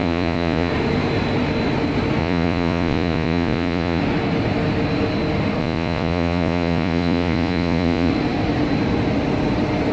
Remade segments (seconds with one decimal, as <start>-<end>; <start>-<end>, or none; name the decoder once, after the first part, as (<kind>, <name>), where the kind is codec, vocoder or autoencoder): 0.0-0.7 (vocoder, Vocos); 2.2-4.0; 5.6-8.1